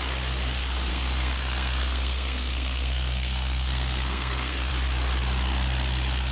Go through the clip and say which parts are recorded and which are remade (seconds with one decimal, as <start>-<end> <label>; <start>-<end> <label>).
0.0-0.9 recorded; 0.9-4.7 remade; 4.7-6.3 recorded